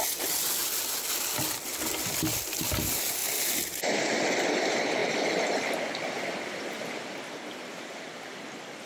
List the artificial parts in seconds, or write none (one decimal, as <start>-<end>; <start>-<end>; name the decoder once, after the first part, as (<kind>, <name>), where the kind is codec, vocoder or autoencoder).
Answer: 3.2-3.8 (vocoder, BigVGAN v2)